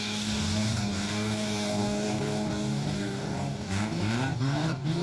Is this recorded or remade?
remade